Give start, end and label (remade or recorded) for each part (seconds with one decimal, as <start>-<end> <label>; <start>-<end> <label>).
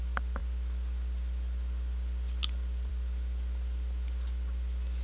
0.0-5.0 recorded